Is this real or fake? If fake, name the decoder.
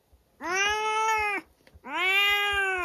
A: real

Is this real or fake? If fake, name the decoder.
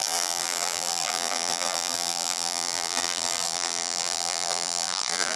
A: fake, vocoder, BigVGAN v2